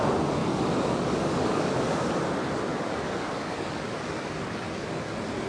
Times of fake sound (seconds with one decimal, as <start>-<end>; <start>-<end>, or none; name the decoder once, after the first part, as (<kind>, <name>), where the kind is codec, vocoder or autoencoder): 0.4-2.1 (codec, DAC); 2.7-5.1